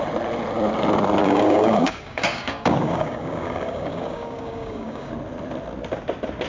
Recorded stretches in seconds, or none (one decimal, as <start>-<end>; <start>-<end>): 0.0-1.2; 5.1-6.5